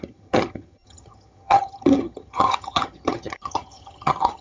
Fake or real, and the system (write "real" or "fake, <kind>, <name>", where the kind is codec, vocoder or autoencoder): fake, vocoder, HiFi-GAN